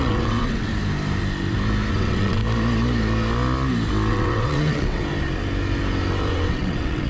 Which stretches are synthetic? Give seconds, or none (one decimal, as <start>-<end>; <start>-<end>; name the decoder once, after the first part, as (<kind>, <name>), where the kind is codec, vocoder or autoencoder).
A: 0.0-0.7 (vocoder, WaveNeXt); 1.9-2.4; 4.1-5.0; 6.3-7.1